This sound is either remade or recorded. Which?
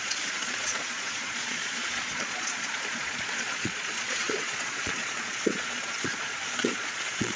remade